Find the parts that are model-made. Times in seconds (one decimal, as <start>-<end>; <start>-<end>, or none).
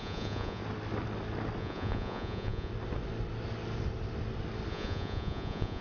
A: 0.0-0.6; 1.6-2.7; 4.7-5.8